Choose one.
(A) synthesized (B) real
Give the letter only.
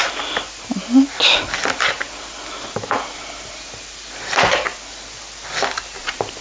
B